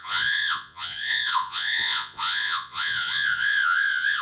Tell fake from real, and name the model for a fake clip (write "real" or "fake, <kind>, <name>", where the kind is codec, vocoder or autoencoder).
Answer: fake, vocoder, Vocos